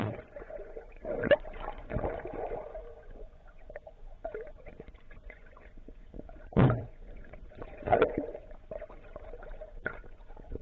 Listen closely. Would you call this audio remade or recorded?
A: remade